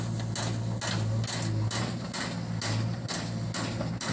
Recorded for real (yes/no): yes